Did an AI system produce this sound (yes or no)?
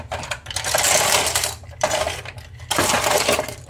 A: yes